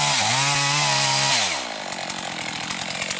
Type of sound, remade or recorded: recorded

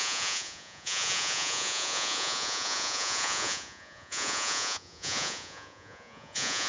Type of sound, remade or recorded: remade